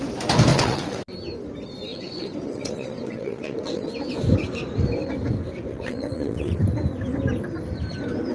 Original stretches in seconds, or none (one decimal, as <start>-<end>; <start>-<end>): 0.0-0.5; 1.0-1.9; 3.9-5.7; 6.6-8.3